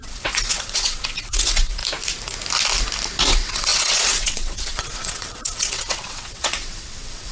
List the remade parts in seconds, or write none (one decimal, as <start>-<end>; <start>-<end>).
0.0-1.8; 3.3-7.3